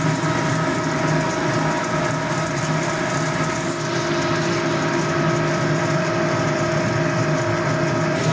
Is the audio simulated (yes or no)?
no